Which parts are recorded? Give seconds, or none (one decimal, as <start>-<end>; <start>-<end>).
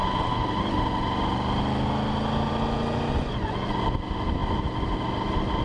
0.0-3.1; 3.8-5.6